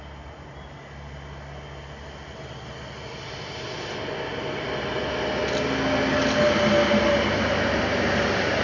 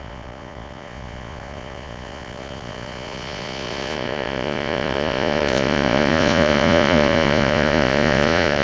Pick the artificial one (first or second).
second